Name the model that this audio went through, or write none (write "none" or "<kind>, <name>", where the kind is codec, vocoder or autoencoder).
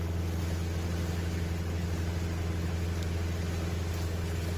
none